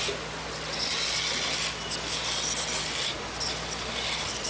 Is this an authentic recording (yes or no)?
yes